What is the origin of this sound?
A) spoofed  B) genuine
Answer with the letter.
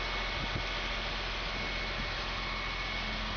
B